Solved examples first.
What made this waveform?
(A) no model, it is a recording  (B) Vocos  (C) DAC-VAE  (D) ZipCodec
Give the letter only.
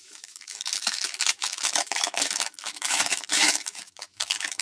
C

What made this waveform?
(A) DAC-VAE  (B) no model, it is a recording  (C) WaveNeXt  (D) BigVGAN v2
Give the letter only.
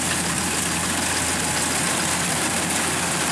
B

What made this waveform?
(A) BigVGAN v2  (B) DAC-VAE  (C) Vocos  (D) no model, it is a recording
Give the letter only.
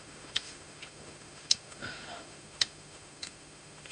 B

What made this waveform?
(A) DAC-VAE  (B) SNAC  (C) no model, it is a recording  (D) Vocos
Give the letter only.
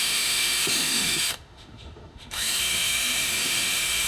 A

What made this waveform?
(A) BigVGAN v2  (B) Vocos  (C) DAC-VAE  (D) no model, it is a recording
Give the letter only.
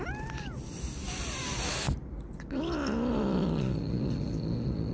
D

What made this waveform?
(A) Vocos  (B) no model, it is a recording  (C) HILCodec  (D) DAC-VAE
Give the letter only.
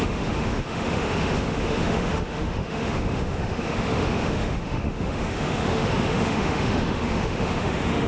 D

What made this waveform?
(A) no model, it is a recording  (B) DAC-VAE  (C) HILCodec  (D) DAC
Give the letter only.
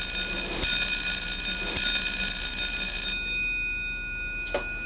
A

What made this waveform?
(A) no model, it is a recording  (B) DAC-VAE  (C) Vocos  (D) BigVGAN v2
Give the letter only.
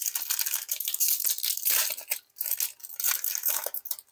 A